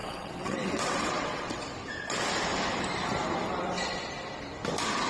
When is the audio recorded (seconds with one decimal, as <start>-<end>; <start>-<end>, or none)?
1.6-5.1